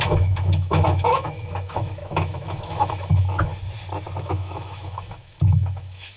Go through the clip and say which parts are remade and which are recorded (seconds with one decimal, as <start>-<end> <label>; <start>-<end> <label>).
0.0-3.5 remade; 3.5-4.2 recorded; 4.2-6.2 remade

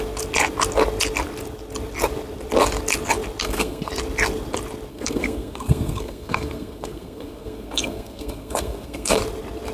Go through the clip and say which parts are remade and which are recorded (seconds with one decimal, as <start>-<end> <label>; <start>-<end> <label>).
0.0-3.4 recorded; 3.4-3.9 remade; 3.9-4.9 recorded; 4.9-9.2 remade; 9.2-9.7 recorded

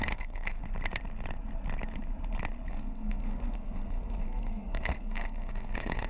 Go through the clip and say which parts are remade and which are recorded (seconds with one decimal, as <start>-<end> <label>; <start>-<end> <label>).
0.0-0.6 remade; 0.6-2.7 recorded; 2.7-6.1 remade

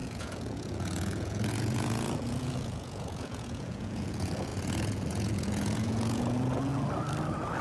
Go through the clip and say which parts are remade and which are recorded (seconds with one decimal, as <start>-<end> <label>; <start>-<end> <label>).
0.0-6.7 remade; 6.7-7.6 recorded

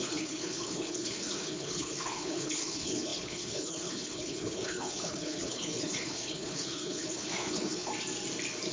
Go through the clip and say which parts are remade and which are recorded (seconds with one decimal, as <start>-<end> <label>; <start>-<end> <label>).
0.0-7.9 remade; 7.9-8.7 recorded

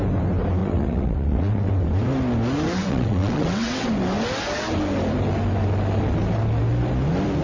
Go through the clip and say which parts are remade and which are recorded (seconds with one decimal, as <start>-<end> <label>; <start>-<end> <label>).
0.0-0.6 recorded; 0.6-1.7 remade; 1.7-2.8 recorded; 2.8-3.9 remade; 3.9-7.4 recorded

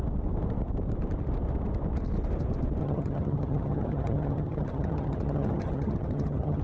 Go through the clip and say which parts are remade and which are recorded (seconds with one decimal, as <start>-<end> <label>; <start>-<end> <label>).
0.0-2.8 recorded; 2.8-6.6 remade

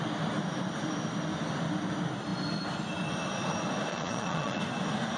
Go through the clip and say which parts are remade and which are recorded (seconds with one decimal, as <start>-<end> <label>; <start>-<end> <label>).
0.0-3.9 recorded; 3.9-4.6 remade; 4.6-5.2 recorded